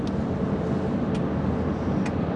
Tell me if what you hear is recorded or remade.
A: recorded